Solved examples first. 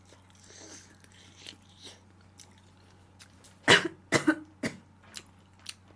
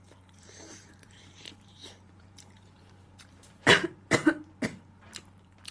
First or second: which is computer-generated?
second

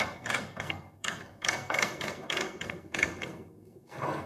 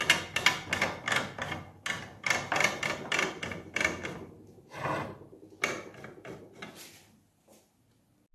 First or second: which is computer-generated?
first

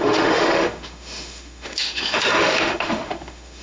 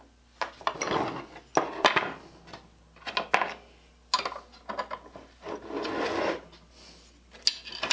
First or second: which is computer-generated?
first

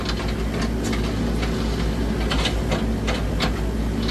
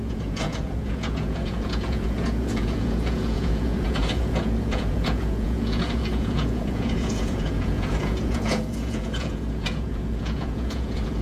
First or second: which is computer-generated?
second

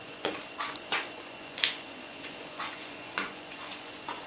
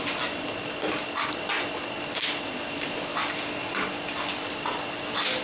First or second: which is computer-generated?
first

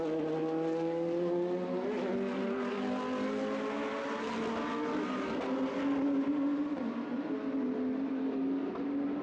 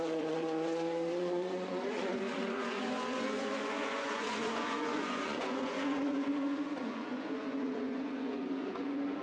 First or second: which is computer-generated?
second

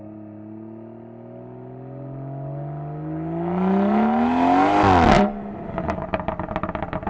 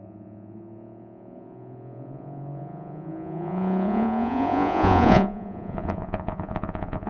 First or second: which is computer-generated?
second